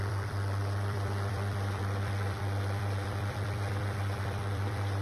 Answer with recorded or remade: remade